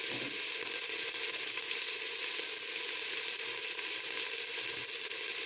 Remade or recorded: recorded